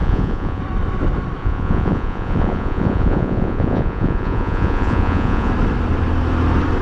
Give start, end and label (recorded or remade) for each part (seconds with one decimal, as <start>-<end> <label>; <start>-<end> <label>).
0.0-0.6 remade; 0.6-1.4 recorded; 1.4-5.5 remade; 5.5-6.8 recorded